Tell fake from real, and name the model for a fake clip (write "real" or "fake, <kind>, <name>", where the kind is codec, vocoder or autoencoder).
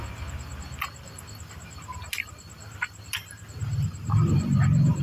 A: real